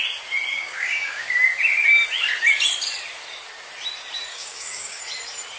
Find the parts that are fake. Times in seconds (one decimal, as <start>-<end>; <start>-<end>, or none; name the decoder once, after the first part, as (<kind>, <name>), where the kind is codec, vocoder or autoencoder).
0.5-1.3 (codec, DAC); 4.3-5.0